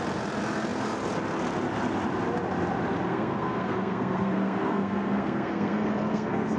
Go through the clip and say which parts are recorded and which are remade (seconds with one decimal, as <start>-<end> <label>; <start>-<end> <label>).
0.0-3.1 recorded; 3.1-6.6 remade